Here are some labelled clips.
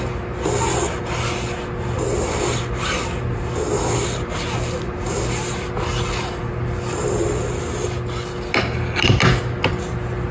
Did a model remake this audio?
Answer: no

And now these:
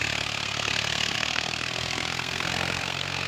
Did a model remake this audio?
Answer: yes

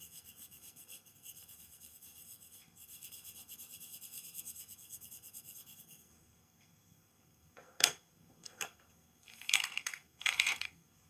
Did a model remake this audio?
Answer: yes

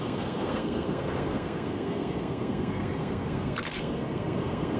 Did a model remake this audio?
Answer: yes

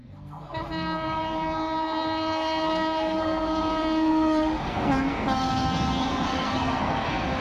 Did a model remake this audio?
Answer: yes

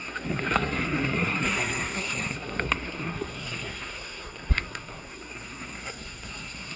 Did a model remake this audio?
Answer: yes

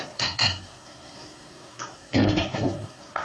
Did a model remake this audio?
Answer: yes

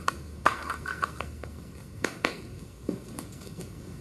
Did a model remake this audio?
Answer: yes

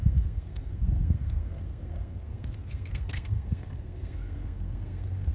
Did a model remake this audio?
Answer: yes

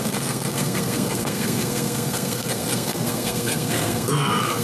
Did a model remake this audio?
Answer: yes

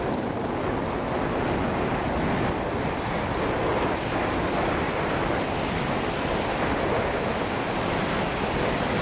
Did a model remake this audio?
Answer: no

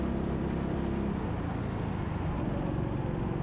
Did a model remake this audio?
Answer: no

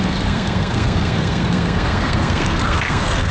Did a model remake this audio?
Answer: yes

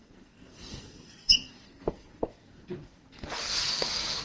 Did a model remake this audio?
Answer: yes